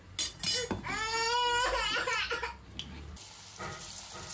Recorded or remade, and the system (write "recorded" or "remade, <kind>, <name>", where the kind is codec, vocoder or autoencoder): recorded